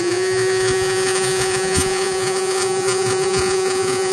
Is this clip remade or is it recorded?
remade